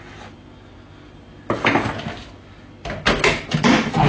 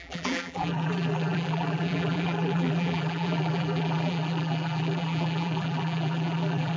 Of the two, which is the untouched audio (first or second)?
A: first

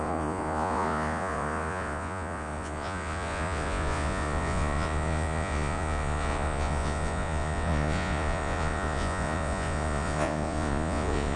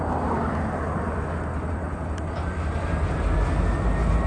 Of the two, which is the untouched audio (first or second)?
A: second